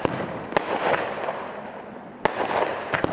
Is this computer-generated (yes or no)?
no